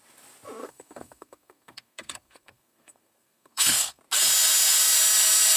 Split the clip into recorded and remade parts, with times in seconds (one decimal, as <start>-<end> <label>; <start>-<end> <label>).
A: 0.0-0.6 recorded; 0.6-4.0 remade; 4.0-5.6 recorded